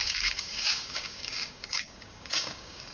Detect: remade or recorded remade